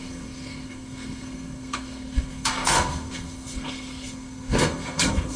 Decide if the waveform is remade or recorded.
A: remade